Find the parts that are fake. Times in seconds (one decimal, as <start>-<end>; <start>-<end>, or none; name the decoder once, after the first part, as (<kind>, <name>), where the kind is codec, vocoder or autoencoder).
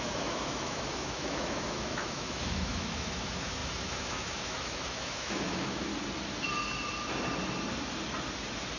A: 0.0-5.9 (autoencoder, DAC-VAE)